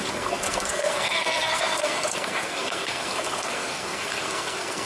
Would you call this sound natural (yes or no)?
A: no